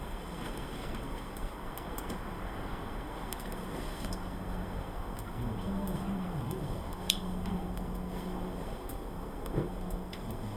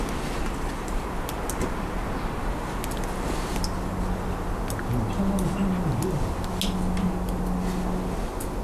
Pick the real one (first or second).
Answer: second